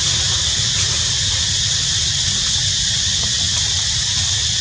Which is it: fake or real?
real